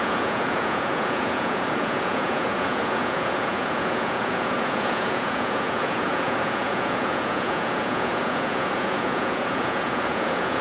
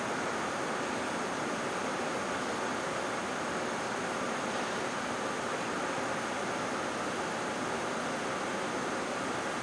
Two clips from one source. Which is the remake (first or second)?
first